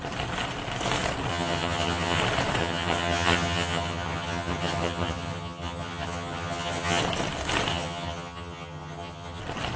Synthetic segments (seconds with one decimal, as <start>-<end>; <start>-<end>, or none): 1.3-2.2; 2.6-7.0; 7.7-9.4

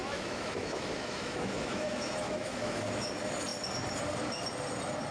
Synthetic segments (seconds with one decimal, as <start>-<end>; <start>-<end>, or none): 0.0-3.1

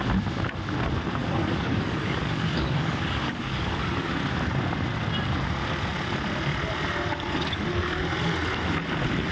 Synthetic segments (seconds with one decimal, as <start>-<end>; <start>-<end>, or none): 1.2-4.1; 7.1-7.6

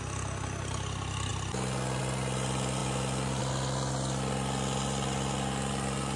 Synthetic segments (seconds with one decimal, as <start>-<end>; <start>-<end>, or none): none

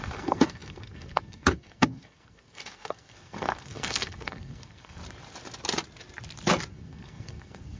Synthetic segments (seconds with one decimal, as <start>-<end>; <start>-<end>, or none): 0.0-5.0; 6.7-7.8

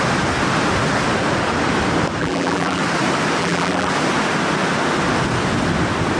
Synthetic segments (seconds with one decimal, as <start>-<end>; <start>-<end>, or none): 2.2-2.8; 3.4-3.9

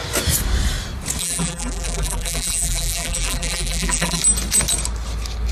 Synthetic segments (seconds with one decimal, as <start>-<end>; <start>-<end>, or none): 1.2-4.2